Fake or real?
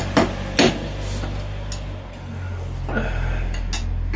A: real